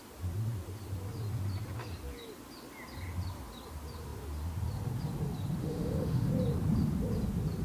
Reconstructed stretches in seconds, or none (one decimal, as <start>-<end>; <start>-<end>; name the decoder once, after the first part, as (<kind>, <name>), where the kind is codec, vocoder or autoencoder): 5.6-6.3 (autoencoder, DAC-VAE)